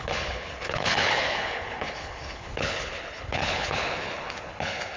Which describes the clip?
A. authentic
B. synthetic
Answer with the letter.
B